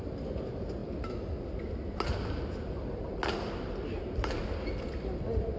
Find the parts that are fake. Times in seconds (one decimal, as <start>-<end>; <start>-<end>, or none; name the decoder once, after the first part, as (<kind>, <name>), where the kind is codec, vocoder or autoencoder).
none